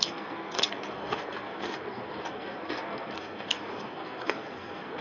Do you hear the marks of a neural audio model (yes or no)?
yes